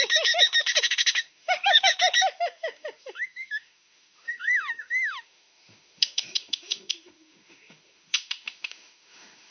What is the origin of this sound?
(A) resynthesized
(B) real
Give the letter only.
A